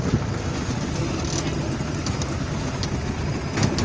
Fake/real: real